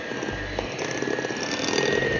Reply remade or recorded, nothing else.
recorded